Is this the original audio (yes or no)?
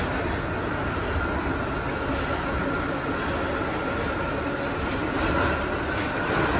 yes